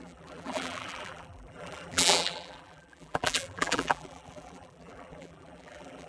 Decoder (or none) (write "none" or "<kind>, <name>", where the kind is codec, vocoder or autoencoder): vocoder, BigVGAN v2